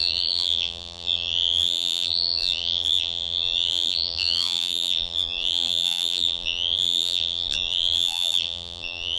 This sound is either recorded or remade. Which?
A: remade